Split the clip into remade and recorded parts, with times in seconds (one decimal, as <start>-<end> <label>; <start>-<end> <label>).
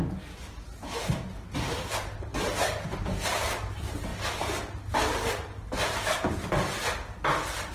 0.0-7.7 recorded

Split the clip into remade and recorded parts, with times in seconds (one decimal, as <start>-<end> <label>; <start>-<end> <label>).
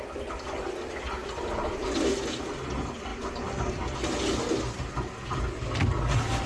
0.0-1.2 recorded; 1.2-2.1 remade; 2.1-6.5 recorded